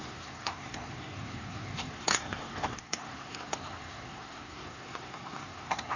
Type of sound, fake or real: fake